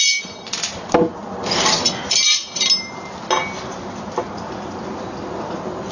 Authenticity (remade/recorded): recorded